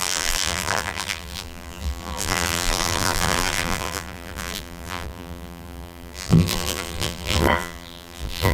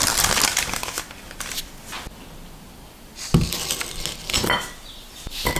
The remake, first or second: first